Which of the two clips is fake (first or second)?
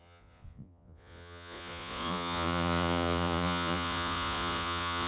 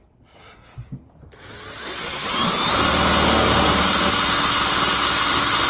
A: first